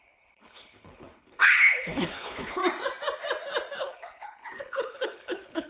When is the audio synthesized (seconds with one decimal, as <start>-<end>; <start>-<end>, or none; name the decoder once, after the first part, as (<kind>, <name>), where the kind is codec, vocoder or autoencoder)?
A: 0.0-2.6 (codec, HILCodec); 3.8-5.7